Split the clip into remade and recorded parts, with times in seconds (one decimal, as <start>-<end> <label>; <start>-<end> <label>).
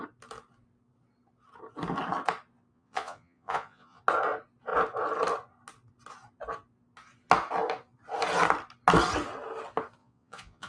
0.0-2.7 recorded; 2.7-4.0 remade; 4.0-10.0 recorded; 10.0-10.7 remade